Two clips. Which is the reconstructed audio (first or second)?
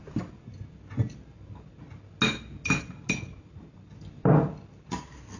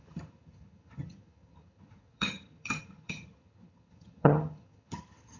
second